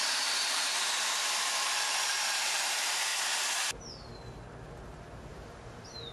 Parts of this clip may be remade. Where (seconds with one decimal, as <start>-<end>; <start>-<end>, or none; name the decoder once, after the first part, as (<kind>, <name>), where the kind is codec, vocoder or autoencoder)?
0.0-0.7 (vocoder, BigVGAN v2); 1.5-3.1; 5.3-6.1